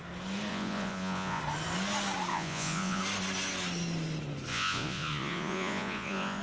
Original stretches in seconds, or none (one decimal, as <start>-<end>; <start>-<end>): 0.0-0.5; 1.4-2.3; 3.0-4.5